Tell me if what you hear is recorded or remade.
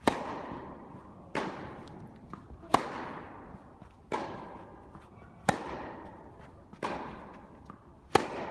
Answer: recorded